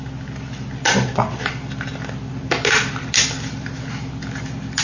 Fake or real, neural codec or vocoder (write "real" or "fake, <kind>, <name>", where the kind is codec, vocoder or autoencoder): real